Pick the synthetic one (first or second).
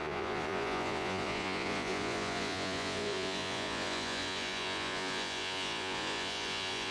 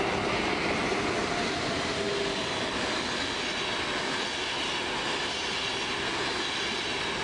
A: first